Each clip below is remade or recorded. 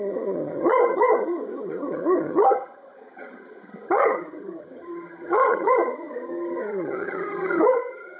remade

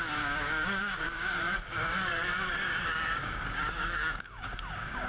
remade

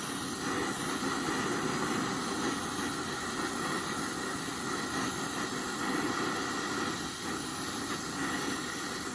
recorded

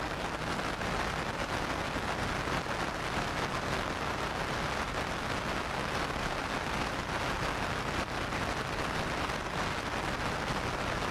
recorded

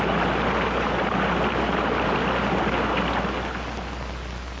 recorded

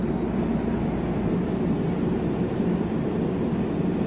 recorded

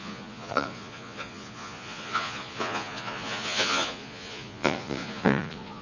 remade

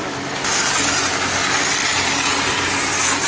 recorded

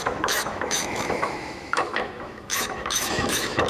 remade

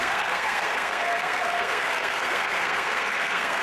remade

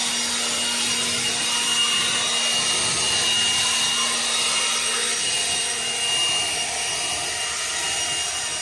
recorded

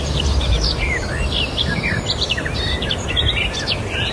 recorded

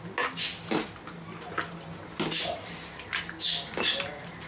recorded